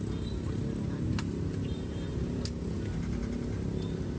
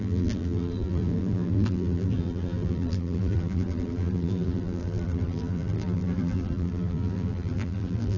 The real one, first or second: first